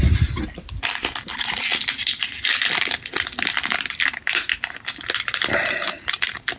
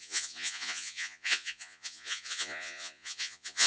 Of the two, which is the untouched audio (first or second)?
first